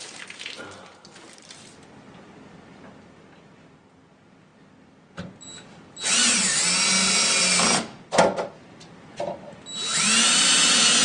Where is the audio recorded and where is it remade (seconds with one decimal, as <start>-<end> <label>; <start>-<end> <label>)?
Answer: 0.0-11.0 recorded